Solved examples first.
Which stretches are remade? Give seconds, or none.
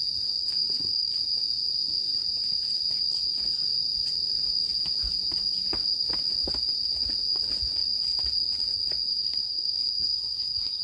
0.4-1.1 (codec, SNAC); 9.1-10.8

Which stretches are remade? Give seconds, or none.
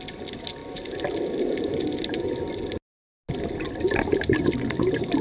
none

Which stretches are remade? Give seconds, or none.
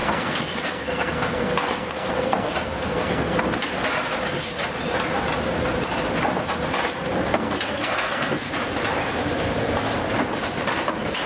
0.0-3.4 (codec, SNAC); 7.3-8.5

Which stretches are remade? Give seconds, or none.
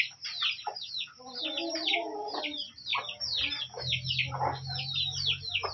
none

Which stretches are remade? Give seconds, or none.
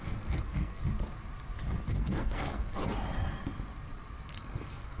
0.0-0.8 (codec, SNAC); 1.9-2.8; 4.3-5.0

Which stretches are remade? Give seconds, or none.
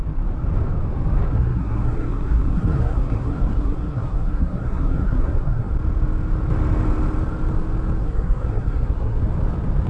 1.3-5.7 (codec, SNAC); 8.0-9.2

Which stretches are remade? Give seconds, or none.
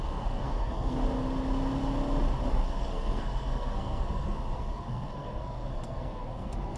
0.0-1.0 (codec, SNAC); 2.5-6.8